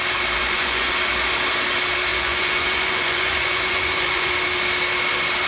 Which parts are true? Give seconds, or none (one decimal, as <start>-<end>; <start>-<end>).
0.0-0.4; 0.9-2.1; 4.3-5.5